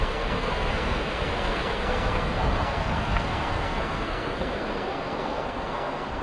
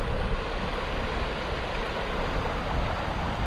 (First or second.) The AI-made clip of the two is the first